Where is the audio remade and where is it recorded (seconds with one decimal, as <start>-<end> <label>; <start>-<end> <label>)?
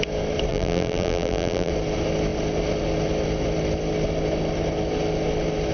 0.0-0.5 recorded; 0.5-1.7 remade; 1.7-5.7 recorded